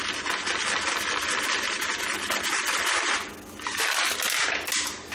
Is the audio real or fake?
real